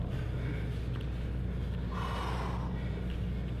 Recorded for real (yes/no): yes